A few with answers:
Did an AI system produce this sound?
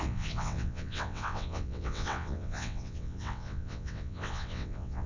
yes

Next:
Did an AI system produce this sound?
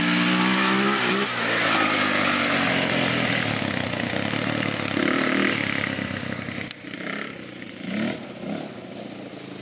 no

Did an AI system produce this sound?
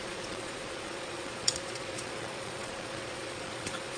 yes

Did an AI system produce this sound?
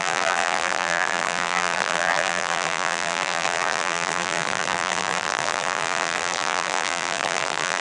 yes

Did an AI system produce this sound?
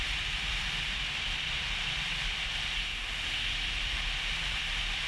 yes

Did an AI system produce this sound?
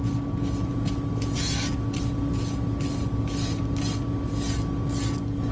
no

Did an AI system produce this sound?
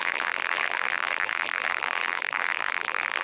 yes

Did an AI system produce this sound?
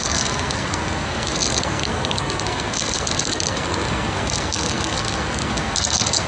yes